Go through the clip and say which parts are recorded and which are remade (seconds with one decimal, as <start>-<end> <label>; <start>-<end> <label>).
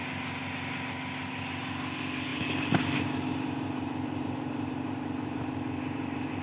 0.0-2.3 recorded; 2.3-6.4 remade